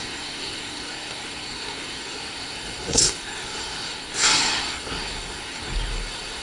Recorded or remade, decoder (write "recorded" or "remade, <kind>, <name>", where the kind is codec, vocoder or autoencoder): remade, codec, SNAC